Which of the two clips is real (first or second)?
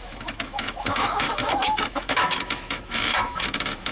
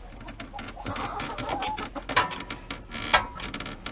second